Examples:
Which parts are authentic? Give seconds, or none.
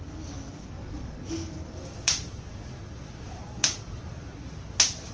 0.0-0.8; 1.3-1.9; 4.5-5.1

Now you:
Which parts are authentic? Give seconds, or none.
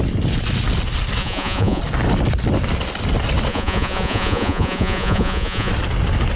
0.0-1.2; 1.8-3.5; 5.7-6.4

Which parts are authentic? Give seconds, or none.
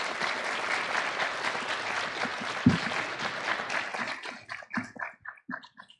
0.0-6.0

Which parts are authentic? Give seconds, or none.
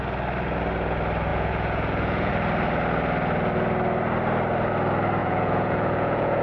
0.0-1.3; 2.3-5.2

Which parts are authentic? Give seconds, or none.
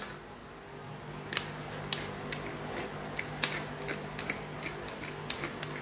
0.0-5.8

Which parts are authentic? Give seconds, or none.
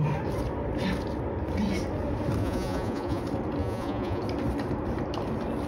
0.0-2.4; 3.2-3.6; 4.2-5.7